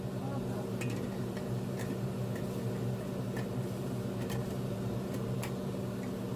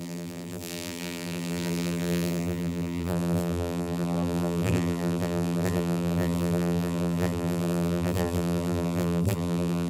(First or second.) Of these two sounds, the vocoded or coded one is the second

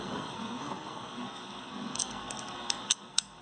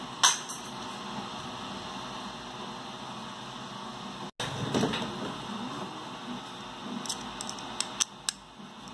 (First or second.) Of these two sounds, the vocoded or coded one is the first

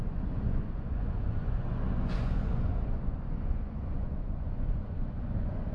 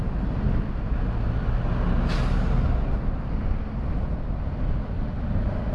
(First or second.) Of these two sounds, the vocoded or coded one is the first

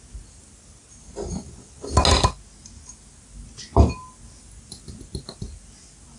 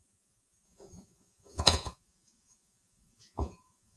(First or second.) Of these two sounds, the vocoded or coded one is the second